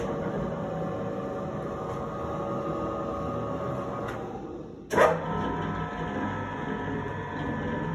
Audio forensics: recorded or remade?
recorded